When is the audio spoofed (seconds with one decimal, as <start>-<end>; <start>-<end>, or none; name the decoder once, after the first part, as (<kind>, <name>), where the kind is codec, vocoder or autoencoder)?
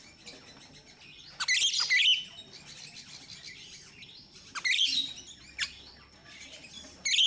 none